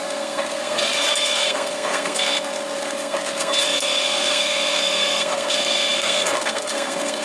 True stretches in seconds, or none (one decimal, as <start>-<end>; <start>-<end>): none